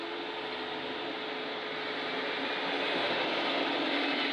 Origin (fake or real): real